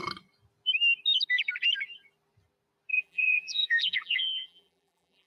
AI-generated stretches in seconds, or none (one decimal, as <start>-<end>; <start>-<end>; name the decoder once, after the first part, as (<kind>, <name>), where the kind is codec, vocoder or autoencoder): 2.9-5.3 (vocoder, BigVGAN v2)